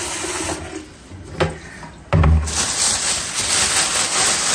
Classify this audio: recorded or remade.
recorded